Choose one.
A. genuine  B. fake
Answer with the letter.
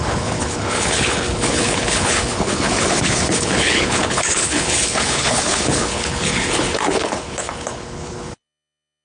B